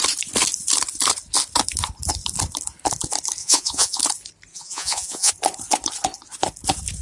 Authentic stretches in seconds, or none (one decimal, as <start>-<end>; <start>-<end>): 0.0-3.4; 4.0-4.5; 5.3-7.0